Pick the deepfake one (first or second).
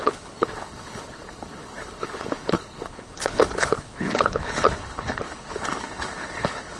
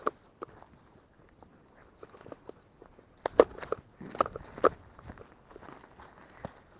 first